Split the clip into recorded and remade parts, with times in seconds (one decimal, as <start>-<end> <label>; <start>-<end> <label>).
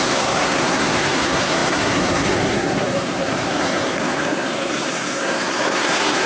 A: 0.0-6.3 remade